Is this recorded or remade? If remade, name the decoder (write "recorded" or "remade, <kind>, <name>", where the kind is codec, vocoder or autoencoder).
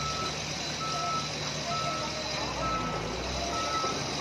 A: recorded